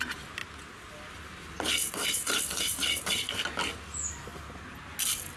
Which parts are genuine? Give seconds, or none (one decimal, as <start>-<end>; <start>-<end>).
0.0-1.8; 3.7-5.4